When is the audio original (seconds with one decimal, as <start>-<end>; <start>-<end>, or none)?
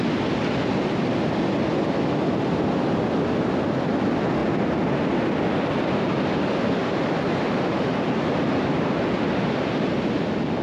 0.0-10.6